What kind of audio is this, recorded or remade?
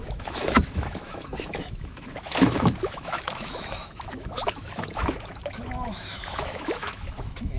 remade